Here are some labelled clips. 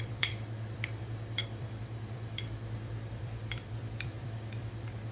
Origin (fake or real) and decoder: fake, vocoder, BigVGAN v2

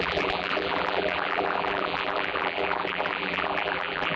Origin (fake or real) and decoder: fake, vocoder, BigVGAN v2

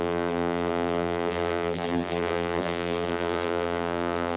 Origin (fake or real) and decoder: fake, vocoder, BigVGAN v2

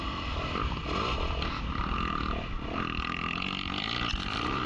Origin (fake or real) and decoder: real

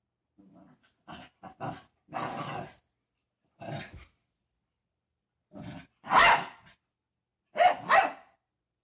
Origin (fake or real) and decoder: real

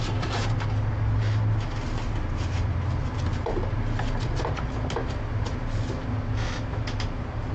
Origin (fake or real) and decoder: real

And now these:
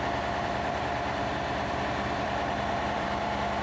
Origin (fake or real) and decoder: fake, vocoder, BigVGAN v2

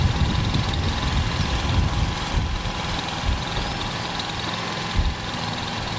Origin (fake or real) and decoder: real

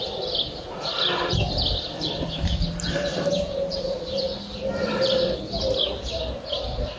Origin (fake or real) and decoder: fake, vocoder, BigVGAN v2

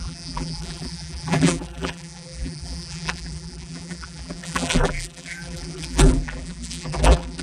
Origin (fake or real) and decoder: fake, vocoder, BigVGAN v2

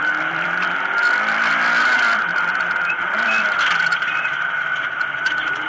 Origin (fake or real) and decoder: fake, vocoder, BigVGAN v2